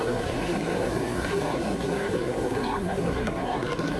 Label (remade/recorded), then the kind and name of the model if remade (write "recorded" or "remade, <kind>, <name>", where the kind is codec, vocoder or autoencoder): remade, codec, SNAC